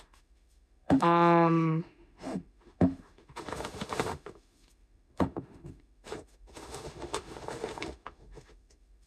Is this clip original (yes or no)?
no